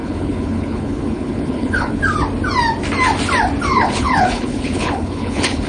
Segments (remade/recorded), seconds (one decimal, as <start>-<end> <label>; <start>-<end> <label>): 0.0-2.0 remade; 2.0-3.7 recorded; 3.7-5.7 remade